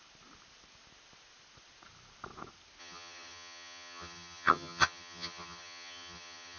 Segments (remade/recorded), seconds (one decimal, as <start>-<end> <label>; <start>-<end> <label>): 0.0-2.8 recorded; 2.8-6.6 remade